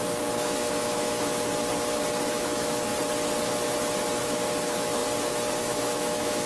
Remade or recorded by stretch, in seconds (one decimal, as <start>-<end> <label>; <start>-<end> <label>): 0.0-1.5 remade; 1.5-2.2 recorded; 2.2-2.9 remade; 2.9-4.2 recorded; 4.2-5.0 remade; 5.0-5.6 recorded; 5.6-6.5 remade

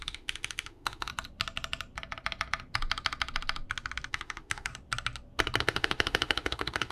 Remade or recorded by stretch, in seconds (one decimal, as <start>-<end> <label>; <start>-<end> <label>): 0.0-1.1 remade; 1.1-4.1 recorded; 4.1-4.7 remade; 4.7-5.6 recorded; 5.6-6.9 remade

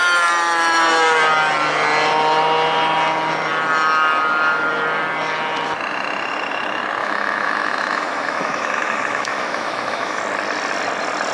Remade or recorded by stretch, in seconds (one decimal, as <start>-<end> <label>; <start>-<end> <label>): 0.0-7.0 recorded; 7.0-10.2 remade; 10.2-11.3 recorded

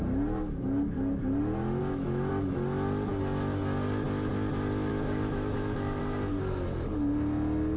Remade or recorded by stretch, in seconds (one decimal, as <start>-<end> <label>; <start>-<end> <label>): 0.0-1.8 recorded; 1.8-2.3 remade; 2.3-4.9 recorded; 4.9-6.0 remade; 6.0-7.8 recorded

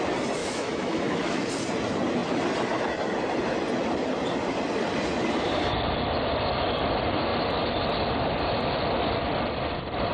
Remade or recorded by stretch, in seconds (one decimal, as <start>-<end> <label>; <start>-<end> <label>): 0.0-0.4 recorded; 0.4-1.5 remade; 1.5-10.1 recorded